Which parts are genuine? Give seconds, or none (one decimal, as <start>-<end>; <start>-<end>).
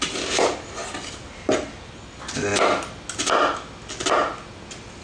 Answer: 0.0-5.0